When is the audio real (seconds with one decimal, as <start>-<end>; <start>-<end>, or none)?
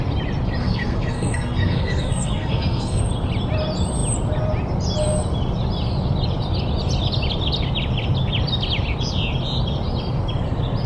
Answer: 0.0-0.6; 3.0-10.9